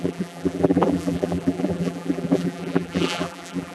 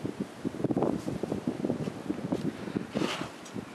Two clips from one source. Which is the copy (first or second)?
first